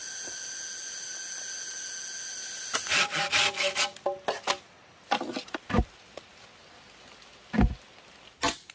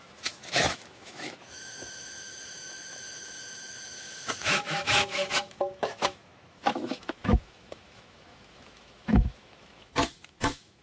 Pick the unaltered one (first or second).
first